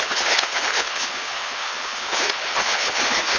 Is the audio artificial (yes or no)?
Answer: yes